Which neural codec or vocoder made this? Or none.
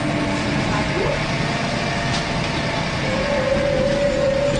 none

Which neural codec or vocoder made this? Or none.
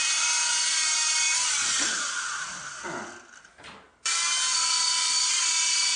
none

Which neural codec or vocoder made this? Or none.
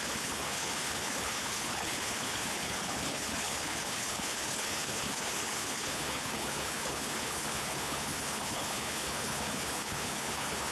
codec, HILCodec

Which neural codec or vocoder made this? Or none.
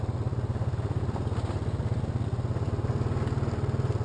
none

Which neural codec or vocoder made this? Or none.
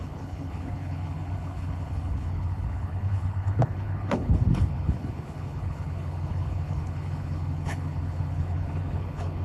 codec, HILCodec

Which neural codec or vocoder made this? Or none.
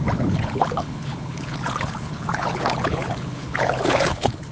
codec, HILCodec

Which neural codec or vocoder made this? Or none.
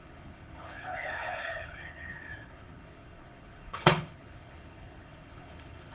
codec, HILCodec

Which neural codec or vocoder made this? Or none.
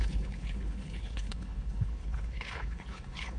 codec, HILCodec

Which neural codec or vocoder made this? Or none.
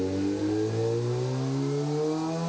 none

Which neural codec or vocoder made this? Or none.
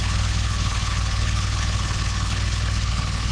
codec, HILCodec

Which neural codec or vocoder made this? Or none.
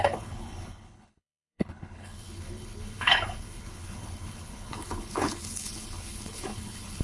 codec, HILCodec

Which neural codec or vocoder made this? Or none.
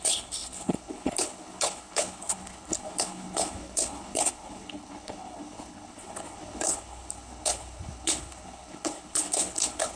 codec, HILCodec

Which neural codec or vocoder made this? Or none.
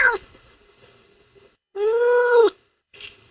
codec, HILCodec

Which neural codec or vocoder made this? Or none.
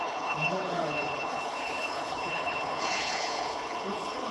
codec, HILCodec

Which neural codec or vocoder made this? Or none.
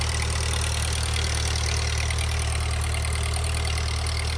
none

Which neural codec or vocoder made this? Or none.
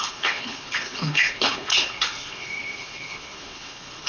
codec, HILCodec